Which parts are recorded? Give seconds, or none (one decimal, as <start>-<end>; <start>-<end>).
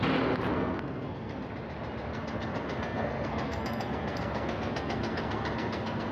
0.0-0.5; 1.4-2.1